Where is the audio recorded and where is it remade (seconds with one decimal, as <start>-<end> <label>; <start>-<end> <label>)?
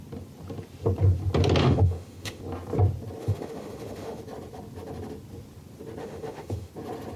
0.0-1.6 recorded; 1.6-2.4 remade; 2.4-3.2 recorded; 3.2-4.2 remade; 4.2-6.0 recorded; 6.0-6.7 remade; 6.7-7.2 recorded